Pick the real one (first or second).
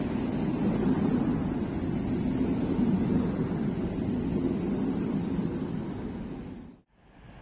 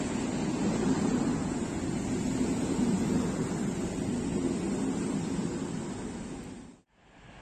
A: second